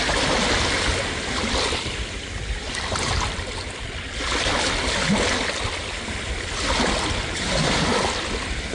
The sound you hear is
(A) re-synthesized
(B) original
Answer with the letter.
B